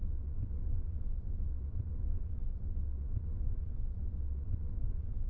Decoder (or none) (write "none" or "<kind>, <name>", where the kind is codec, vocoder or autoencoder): vocoder, WaveNeXt